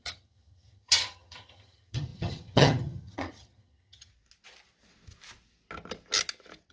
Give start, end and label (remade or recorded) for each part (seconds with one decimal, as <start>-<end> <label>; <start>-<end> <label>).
0.0-4.1 remade; 4.1-6.7 recorded